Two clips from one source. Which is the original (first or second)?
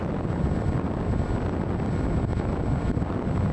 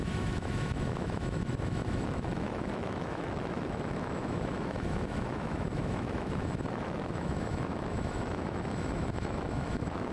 first